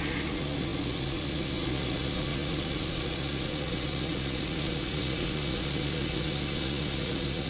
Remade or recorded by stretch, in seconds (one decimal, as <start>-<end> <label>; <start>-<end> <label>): 0.0-7.5 remade